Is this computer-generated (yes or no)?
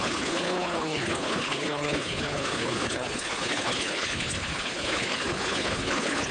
yes